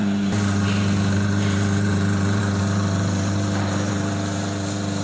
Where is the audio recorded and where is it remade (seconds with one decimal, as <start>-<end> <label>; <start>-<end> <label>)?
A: 0.0-5.0 remade